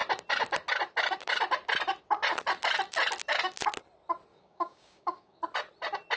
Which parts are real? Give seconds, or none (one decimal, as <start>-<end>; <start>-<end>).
0.0-4.3; 5.4-6.2